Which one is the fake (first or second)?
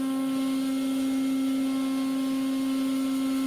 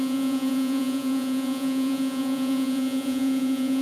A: second